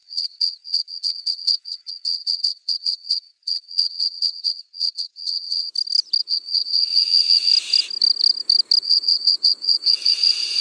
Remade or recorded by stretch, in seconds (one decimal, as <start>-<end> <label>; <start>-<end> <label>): 0.0-5.7 remade; 5.7-6.2 recorded; 6.2-7.5 remade; 7.5-8.8 recorded; 8.8-10.6 remade